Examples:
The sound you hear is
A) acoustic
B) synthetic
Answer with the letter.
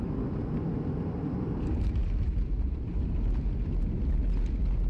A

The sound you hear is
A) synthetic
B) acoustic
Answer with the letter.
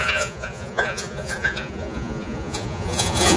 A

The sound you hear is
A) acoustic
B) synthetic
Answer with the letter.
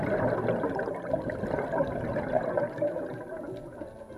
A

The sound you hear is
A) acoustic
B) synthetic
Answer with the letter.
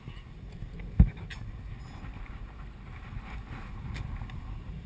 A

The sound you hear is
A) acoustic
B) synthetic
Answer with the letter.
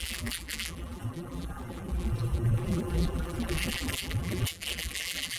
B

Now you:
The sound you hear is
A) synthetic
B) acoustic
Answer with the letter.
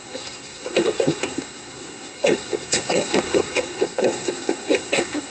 A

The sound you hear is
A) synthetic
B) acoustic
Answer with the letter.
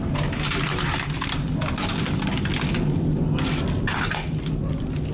B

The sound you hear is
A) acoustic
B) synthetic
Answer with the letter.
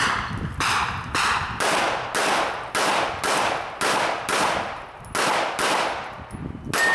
A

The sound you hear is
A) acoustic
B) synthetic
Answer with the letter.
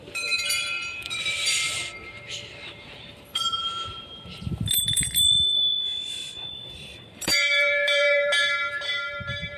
B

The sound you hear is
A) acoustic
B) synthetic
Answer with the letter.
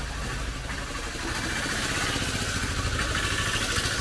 A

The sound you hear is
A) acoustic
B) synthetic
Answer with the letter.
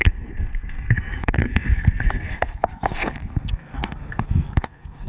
B